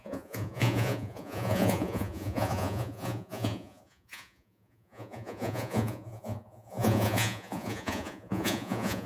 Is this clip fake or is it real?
fake